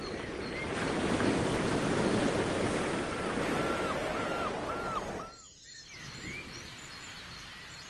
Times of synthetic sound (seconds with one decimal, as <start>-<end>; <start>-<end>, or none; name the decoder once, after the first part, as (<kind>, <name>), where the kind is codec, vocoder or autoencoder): 4.0-4.7 (vocoder, BigVGAN v2)